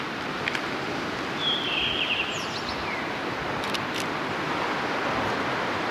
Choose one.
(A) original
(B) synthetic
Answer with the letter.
A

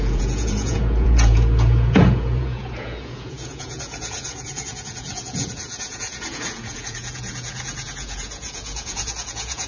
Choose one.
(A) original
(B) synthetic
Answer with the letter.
B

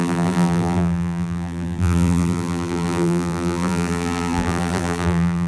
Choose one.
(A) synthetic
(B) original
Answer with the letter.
A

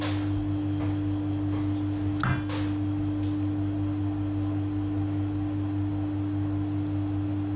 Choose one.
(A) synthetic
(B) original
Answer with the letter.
B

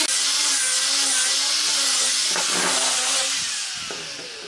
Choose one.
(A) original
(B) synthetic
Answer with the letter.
A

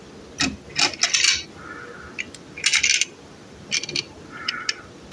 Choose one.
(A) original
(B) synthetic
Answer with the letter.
A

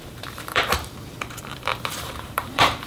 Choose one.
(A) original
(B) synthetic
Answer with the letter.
B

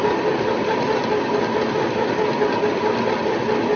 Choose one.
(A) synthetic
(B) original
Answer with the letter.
B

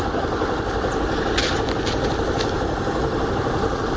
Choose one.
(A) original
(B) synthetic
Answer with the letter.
A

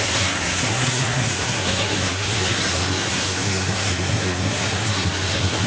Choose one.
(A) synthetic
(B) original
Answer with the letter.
A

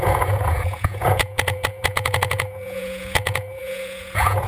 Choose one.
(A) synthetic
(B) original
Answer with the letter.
A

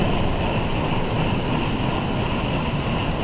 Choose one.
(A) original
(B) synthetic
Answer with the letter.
A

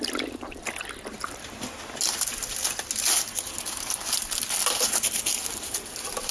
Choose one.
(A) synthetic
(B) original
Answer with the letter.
B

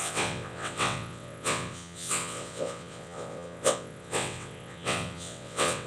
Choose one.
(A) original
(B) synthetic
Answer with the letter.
B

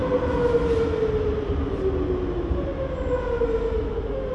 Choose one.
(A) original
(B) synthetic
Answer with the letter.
A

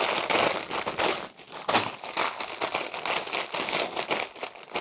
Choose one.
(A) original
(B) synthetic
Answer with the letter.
A